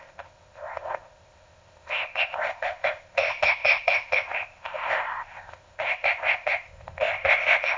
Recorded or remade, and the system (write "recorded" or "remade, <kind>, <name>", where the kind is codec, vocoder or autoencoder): remade, codec, ZipCodec